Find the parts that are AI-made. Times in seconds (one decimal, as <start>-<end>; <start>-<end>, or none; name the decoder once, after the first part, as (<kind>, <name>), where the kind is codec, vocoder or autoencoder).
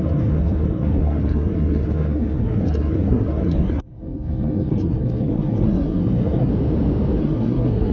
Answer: 0.0-6.5 (codec, SNAC); 7.2-7.9